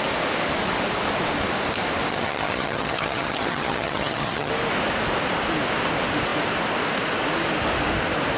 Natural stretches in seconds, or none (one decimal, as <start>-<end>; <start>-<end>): 0.0-2.1; 4.5-8.4